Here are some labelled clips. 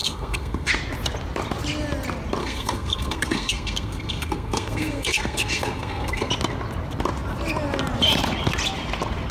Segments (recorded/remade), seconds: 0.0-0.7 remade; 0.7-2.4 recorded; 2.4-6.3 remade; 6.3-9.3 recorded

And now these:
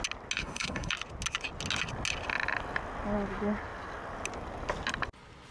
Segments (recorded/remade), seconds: 0.0-0.4 recorded; 0.4-0.9 remade; 0.9-5.5 recorded

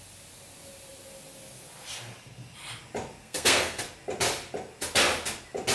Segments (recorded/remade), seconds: 0.0-3.2 recorded; 3.2-3.8 remade; 3.8-5.7 recorded